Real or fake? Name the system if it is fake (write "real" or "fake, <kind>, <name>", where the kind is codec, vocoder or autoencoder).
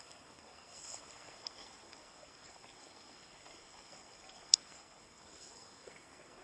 fake, codec, SNAC